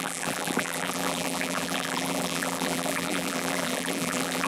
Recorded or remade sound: remade